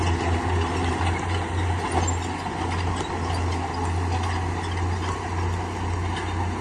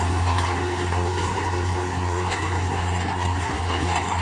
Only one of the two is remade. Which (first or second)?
second